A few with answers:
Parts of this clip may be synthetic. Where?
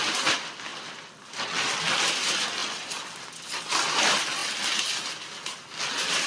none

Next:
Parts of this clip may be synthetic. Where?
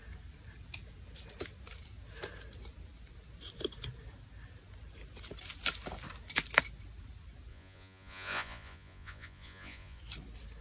7.5-10.0 (vocoder, Vocos)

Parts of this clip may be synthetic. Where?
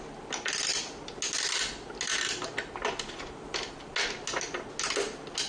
none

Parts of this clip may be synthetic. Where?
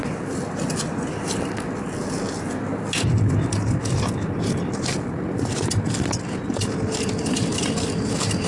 none